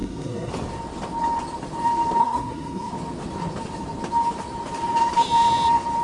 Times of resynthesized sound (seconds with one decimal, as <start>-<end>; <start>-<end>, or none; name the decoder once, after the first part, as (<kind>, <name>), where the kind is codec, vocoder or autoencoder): 0.0-0.5 (codec, SNAC); 2.2-2.9